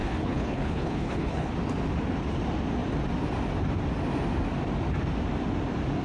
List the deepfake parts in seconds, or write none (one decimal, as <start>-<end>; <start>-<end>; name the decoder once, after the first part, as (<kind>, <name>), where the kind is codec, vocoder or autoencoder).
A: 0.0-1.5 (codec, HILCodec)